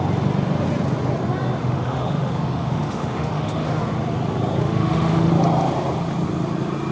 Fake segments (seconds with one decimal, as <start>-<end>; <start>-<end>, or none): 1.6-3.8; 4.6-5.3